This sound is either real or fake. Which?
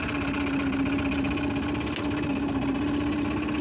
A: real